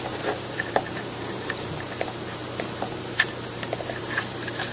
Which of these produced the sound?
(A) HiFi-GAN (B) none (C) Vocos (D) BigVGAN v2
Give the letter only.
D